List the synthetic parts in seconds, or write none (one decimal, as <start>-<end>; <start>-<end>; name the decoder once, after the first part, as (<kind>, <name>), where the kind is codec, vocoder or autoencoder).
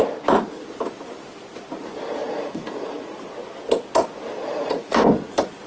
2.2-3.3 (vocoder, Vocos); 4.4-5.0